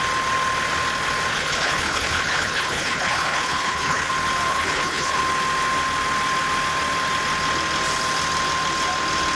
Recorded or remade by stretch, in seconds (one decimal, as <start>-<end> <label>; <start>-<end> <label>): 0.0-1.3 recorded; 1.3-4.1 remade; 4.1-4.5 recorded; 4.5-5.2 remade; 5.2-9.4 recorded